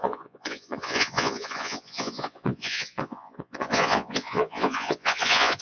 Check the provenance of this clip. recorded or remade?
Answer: remade